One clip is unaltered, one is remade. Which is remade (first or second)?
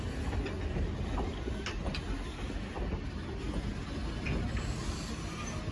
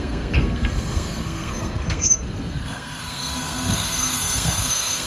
second